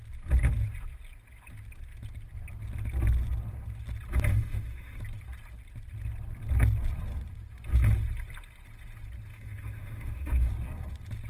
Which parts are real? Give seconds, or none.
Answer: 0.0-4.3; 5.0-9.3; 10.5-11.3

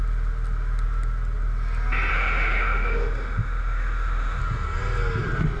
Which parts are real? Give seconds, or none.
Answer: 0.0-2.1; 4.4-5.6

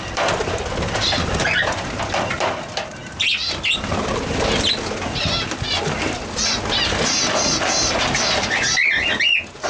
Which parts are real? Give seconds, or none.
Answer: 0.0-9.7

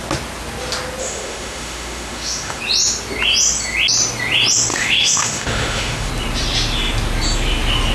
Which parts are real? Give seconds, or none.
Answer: 0.0-1.0; 2.6-4.7; 6.1-7.9

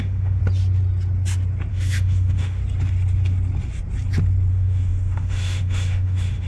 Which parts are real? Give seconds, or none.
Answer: 0.4-1.7; 2.6-4.5

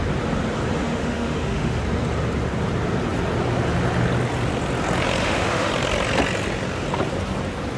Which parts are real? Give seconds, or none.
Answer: 0.0-0.8; 1.8-5.2; 5.7-7.8

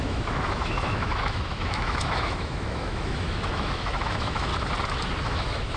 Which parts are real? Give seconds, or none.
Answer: 4.5-5.2

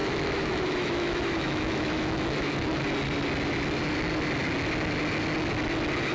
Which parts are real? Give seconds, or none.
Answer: 2.8-6.1